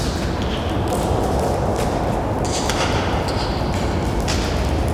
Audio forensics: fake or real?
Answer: real